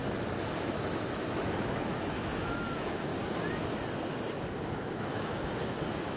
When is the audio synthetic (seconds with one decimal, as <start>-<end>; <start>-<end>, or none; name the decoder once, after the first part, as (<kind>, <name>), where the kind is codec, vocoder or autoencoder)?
0.6-3.1 (autoencoder, DAC-VAE); 4.8-6.2